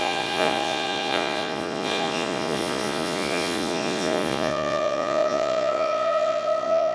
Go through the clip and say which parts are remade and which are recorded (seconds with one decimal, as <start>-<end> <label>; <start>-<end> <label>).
0.0-6.9 remade